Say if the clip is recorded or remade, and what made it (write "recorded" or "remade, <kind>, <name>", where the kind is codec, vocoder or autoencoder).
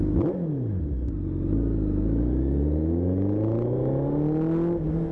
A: recorded